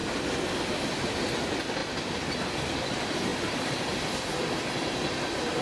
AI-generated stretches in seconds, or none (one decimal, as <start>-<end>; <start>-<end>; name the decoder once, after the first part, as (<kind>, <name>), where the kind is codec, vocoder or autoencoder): 0.0-0.6 (vocoder, BigVGAN v2); 1.8-2.3; 3.3-4.4